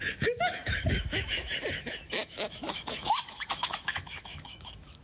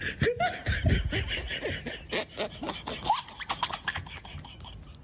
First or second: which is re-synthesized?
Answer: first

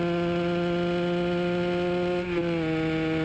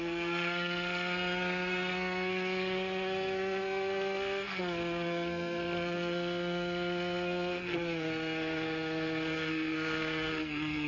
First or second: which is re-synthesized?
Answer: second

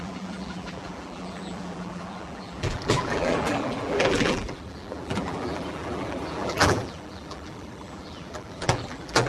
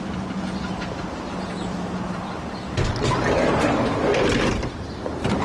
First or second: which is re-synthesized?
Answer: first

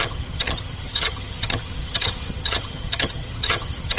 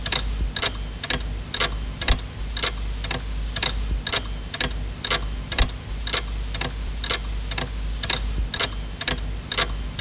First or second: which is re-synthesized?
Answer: first